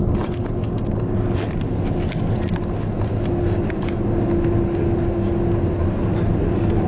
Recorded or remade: recorded